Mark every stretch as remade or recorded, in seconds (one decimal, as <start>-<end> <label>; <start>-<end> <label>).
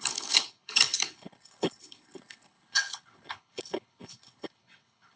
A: 0.0-5.2 remade